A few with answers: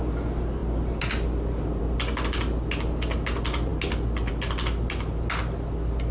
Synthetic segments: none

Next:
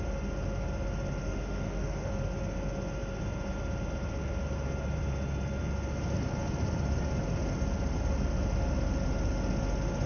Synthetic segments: 1.2-2.1 (autoencoder, DAC-VAE)

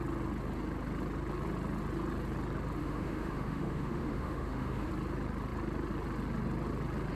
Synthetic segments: 2.8-4.9 (autoencoder, DAC-VAE)

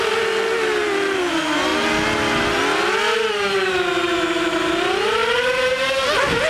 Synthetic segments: none